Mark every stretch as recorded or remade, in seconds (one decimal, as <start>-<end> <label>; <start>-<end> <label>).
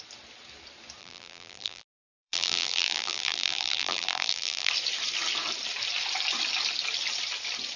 0.0-1.0 recorded; 1.0-4.7 remade; 4.7-7.8 recorded